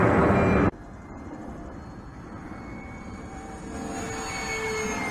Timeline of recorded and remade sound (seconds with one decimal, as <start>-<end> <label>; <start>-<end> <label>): 0.0-2.1 recorded; 2.1-3.6 remade; 3.6-5.1 recorded